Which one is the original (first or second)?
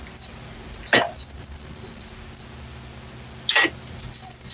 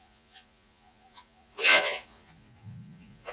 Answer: first